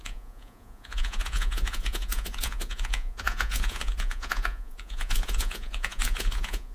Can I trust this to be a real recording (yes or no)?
no